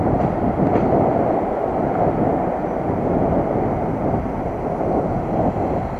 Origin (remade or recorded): recorded